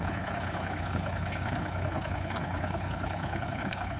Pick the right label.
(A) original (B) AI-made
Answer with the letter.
B